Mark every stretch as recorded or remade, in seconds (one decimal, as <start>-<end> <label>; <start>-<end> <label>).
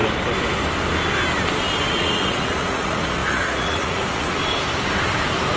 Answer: 0.0-1.9 recorded; 1.9-4.4 remade; 4.4-5.6 recorded